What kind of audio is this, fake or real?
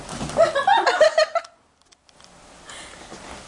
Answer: real